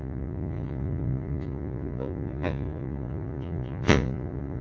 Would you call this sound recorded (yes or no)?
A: no